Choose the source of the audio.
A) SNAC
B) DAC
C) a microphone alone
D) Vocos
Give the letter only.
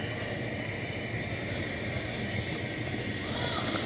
C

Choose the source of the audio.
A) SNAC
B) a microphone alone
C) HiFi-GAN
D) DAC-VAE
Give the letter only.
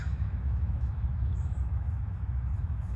D